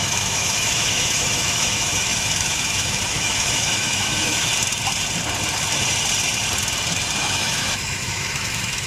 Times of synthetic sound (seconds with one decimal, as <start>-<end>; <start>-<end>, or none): 0.0-4.5; 7.2-8.9